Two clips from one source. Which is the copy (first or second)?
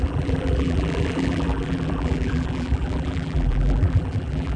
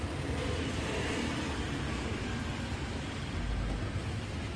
first